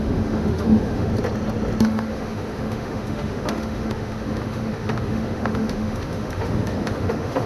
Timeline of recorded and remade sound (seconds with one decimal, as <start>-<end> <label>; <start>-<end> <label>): 0.0-1.1 remade; 1.1-1.8 recorded; 1.8-7.5 remade